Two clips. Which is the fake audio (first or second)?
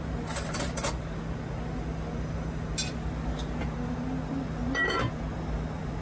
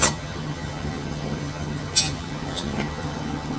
second